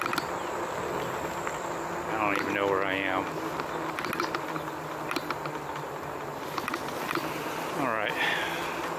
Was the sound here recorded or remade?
recorded